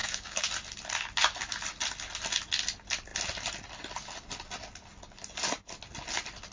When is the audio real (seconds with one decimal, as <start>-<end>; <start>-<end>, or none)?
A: 0.5-6.5